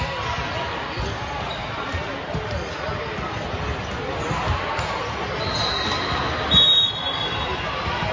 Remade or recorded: recorded